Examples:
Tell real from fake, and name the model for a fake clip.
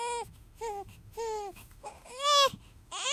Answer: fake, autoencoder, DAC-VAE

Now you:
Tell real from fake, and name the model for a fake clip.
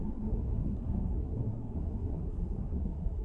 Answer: fake, codec, SNAC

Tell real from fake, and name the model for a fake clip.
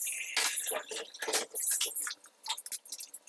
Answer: real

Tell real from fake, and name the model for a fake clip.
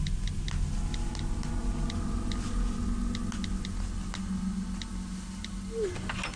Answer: real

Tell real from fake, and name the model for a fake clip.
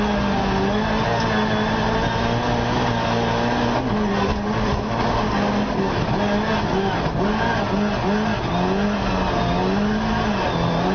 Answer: real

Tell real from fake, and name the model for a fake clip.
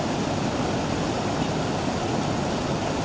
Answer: real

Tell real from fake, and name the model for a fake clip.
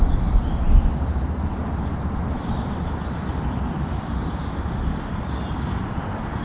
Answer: real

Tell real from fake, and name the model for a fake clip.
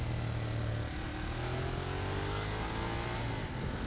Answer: real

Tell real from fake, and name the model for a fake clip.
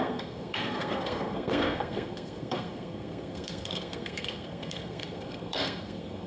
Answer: fake, codec, SNAC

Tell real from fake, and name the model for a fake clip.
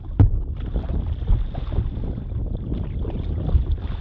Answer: real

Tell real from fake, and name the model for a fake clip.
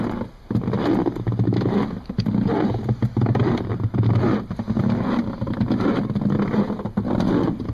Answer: real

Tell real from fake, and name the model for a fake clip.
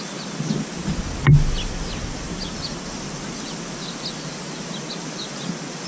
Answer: real